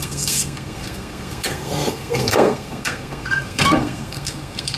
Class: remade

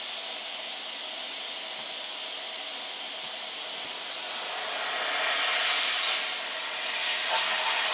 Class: recorded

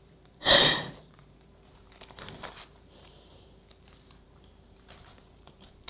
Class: remade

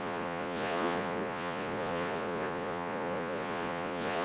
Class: remade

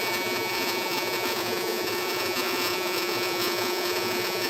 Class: remade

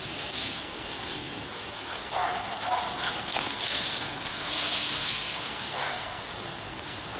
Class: remade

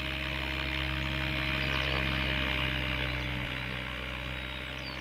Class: recorded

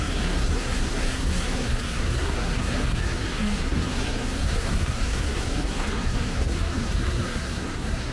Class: remade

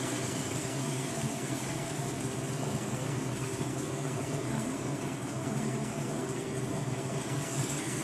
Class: remade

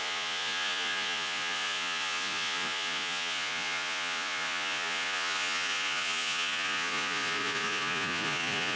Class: remade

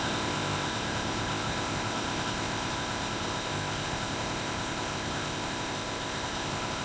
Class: remade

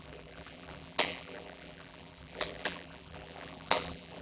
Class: remade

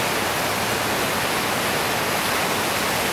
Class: recorded